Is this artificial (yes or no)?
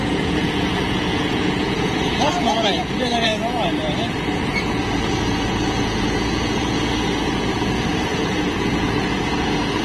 yes